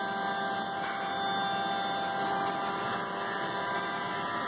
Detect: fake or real real